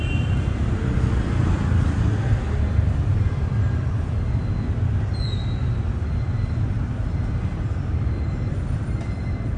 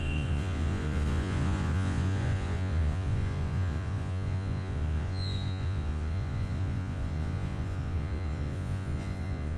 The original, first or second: first